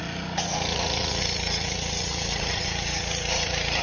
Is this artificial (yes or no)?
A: yes